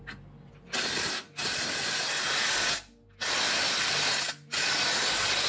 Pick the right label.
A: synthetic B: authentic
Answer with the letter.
B